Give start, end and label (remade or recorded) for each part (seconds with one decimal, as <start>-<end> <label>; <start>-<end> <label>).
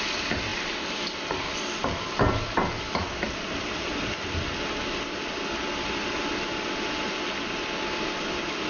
0.0-8.7 recorded